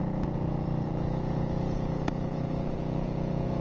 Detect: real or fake fake